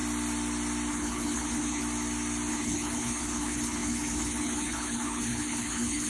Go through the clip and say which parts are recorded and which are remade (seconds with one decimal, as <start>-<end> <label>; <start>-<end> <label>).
0.0-0.9 recorded; 0.9-1.8 remade; 1.8-2.5 recorded; 2.5-6.1 remade